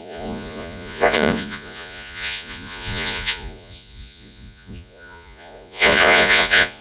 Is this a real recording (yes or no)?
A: no